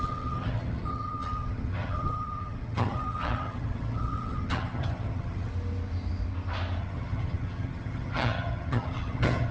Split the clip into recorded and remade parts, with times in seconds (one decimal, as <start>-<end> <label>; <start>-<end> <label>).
0.0-5.5 remade; 5.5-6.8 recorded; 6.8-9.5 remade

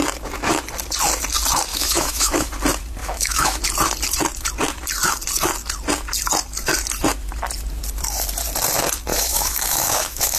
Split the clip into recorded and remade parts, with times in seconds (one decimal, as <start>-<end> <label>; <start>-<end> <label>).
0.0-1.7 recorded; 1.7-2.5 remade; 2.5-3.0 recorded; 3.0-3.6 remade; 3.6-9.1 recorded; 9.1-10.4 remade